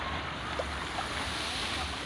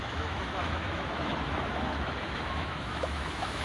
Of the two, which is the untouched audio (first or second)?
first